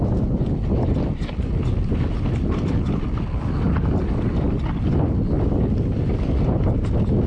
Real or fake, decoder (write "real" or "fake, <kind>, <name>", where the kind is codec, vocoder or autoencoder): real